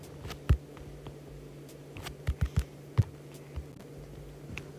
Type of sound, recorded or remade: recorded